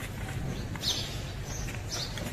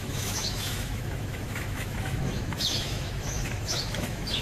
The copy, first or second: second